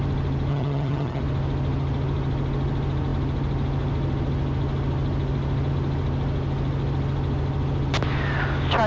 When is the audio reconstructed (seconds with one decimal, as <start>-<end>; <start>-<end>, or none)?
0.5-1.2